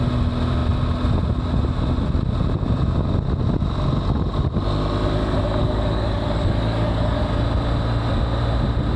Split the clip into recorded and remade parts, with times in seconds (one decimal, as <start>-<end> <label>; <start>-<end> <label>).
0.0-5.6 recorded; 5.6-7.2 remade; 7.2-9.0 recorded